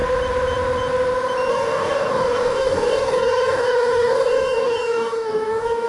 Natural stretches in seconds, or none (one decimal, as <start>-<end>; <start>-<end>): 0.0-1.5